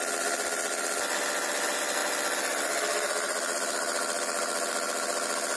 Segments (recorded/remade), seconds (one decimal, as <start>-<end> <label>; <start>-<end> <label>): 0.0-5.6 recorded